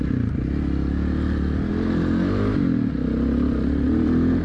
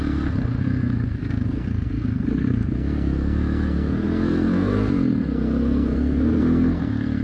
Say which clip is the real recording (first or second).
first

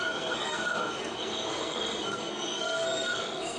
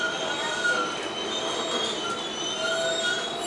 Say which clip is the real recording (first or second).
second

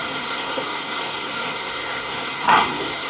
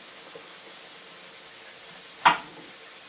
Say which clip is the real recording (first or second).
second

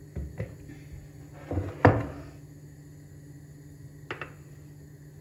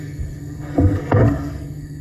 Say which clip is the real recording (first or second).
first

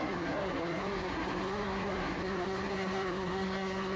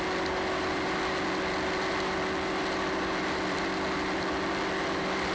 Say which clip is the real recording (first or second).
second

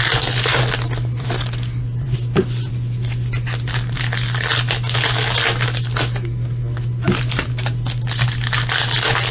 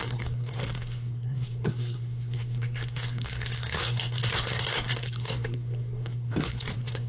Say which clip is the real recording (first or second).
first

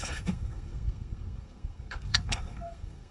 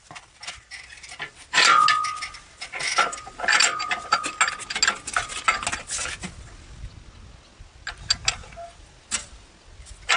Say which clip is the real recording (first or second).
second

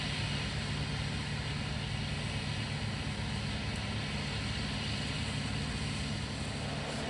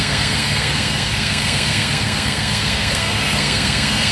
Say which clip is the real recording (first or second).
first